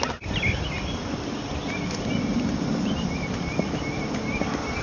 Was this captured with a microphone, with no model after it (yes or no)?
yes